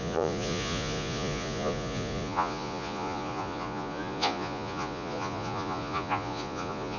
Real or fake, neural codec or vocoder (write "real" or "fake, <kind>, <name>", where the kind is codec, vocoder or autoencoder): fake, vocoder, Vocos